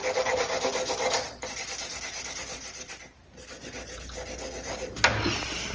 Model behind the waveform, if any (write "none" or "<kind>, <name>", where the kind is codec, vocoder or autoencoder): none